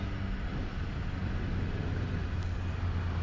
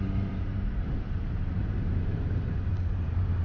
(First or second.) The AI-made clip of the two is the second